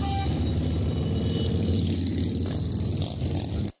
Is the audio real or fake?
real